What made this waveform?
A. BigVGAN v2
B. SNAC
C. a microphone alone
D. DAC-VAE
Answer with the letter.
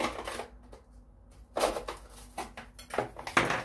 C